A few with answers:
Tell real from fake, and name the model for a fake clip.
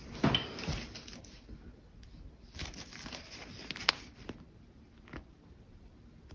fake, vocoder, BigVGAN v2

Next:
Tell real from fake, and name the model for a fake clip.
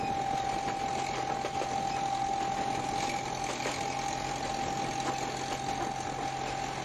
real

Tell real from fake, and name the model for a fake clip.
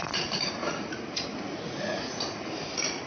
fake, vocoder, Vocos